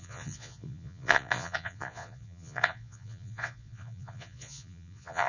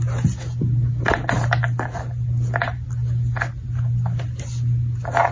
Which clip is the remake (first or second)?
first